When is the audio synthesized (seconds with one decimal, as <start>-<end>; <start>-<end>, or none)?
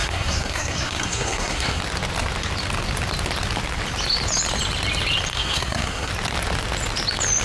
0.0-1.8; 5.3-6.1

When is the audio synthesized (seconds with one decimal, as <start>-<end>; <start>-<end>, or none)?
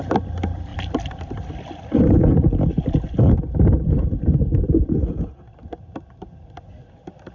0.7-2.7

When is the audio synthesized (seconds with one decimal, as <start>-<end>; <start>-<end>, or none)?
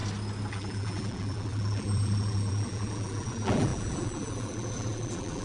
0.5-5.4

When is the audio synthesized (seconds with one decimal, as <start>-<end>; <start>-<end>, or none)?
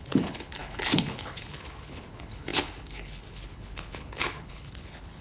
0.0-5.2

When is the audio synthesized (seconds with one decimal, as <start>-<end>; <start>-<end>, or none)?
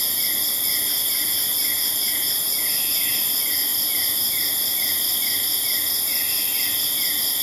none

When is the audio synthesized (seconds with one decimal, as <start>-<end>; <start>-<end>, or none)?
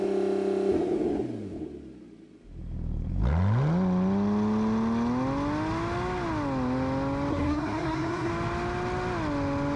7.3-8.3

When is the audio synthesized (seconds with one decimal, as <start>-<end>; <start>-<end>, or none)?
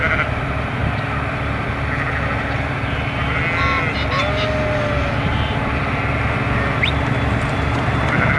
none